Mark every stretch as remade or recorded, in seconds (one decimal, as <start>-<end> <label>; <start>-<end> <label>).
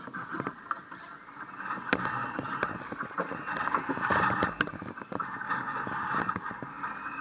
0.0-7.2 recorded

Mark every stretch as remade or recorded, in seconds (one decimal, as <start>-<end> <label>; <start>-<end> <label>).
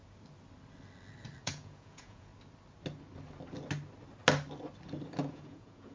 0.0-1.4 recorded; 1.4-2.3 remade; 2.3-5.3 recorded; 5.3-5.9 remade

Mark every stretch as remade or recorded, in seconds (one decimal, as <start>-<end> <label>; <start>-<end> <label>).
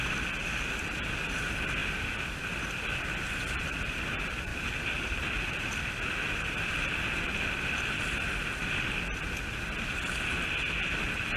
0.0-11.4 recorded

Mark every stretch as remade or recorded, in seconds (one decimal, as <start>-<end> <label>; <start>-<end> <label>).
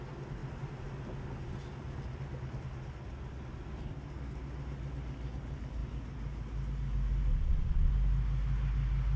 0.0-7.3 recorded; 7.3-7.9 remade; 7.9-9.2 recorded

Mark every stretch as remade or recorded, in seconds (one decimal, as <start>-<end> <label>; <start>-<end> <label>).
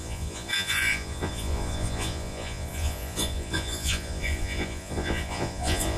0.0-6.0 remade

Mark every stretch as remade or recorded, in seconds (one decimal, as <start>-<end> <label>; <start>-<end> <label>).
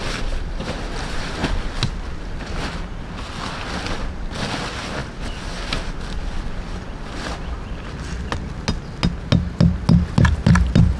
0.0-11.0 recorded